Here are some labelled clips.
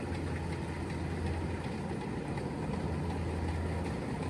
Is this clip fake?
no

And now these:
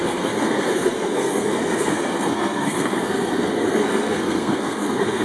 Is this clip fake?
yes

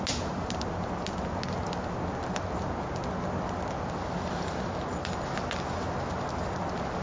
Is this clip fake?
no